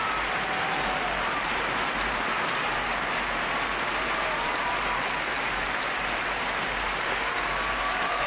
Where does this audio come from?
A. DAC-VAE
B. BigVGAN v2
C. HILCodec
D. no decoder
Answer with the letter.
B